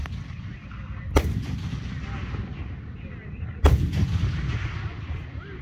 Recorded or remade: recorded